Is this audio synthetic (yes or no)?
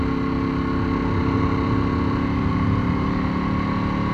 no